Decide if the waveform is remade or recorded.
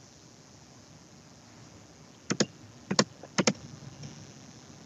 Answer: recorded